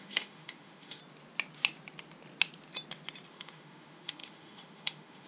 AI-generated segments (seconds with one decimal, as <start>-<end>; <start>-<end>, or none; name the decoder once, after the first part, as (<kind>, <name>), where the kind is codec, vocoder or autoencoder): 0.0-1.0 (autoencoder, DAC-VAE); 3.3-5.3